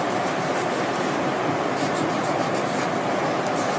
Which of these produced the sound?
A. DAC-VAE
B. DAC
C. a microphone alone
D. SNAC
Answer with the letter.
C